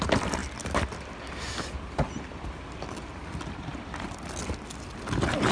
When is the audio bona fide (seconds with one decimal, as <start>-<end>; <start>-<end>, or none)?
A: 0.0-0.4; 1.3-3.7